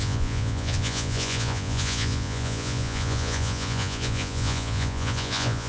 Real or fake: fake